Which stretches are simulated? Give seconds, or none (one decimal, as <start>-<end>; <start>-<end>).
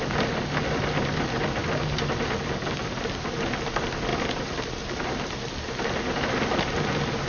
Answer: none